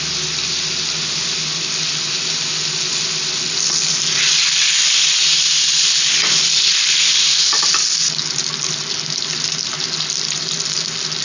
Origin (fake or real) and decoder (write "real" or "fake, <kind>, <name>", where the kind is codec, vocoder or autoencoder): real